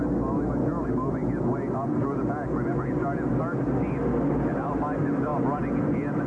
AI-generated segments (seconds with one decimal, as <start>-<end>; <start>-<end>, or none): none